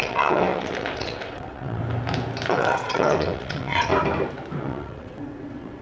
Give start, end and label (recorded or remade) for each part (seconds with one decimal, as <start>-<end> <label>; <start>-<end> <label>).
0.0-1.8 remade; 1.8-2.5 recorded; 2.5-3.9 remade; 3.9-4.6 recorded; 4.6-5.8 remade